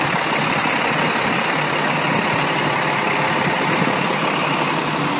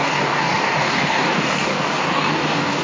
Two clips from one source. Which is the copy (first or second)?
second